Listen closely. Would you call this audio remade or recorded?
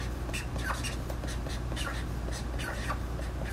recorded